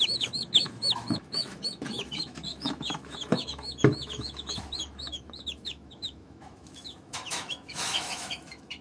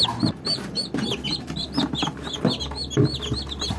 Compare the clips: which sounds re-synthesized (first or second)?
first